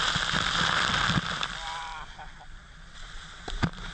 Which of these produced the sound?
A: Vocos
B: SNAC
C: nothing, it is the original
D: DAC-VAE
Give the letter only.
C